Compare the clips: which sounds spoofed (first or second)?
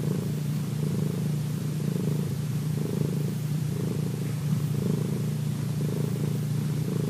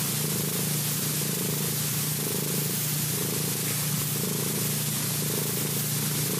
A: first